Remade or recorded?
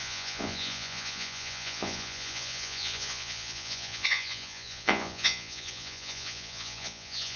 remade